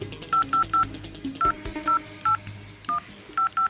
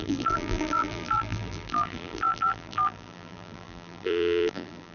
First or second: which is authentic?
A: first